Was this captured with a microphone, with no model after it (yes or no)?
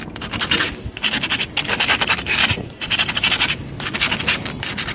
yes